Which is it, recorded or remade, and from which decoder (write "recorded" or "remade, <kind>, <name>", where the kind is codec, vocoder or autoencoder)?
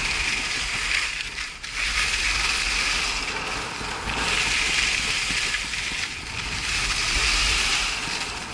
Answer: recorded